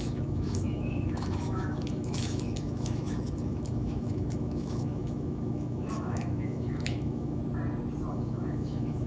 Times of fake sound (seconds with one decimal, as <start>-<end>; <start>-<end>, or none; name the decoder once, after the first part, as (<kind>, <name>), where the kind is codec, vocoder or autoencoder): 0.0-7.4 (autoencoder, DAC-VAE); 8.1-9.1